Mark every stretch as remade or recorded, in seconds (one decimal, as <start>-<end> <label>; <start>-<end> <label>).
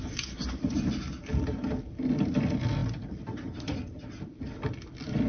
0.0-2.8 recorded; 2.8-4.2 remade; 4.2-5.3 recorded